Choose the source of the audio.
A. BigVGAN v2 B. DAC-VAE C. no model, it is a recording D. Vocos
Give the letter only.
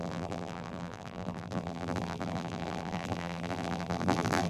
A